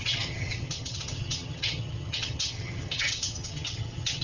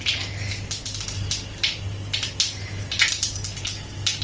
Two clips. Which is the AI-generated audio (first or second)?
first